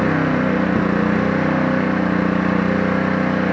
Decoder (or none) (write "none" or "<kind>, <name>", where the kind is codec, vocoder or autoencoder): none